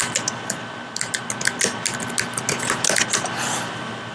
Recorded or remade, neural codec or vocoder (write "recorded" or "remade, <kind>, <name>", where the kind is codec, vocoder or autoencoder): recorded